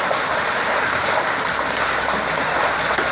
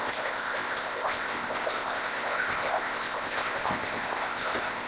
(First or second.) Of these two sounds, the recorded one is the first